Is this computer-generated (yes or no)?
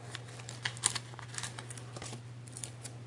yes